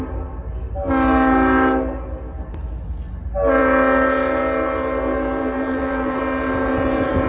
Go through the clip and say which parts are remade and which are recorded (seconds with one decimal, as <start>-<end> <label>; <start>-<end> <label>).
0.0-5.4 recorded; 5.4-6.2 remade; 6.2-7.3 recorded